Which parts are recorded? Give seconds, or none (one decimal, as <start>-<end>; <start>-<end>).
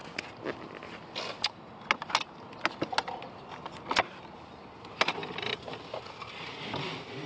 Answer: 0.0-7.3